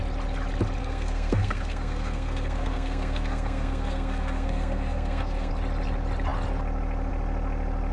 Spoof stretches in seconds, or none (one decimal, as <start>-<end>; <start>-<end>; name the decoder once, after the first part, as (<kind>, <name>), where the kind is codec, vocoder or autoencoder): 0.8-5.5 (codec, SNAC)